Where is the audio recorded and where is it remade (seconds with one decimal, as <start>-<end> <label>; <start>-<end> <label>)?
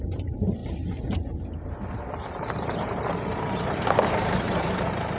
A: 0.0-5.2 remade